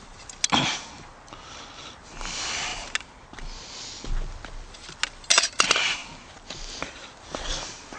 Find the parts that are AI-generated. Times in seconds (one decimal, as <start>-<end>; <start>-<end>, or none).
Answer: none